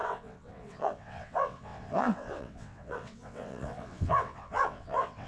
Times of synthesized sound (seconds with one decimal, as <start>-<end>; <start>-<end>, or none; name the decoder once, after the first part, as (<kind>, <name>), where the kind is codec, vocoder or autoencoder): 0.0-5.3 (vocoder, WaveNeXt)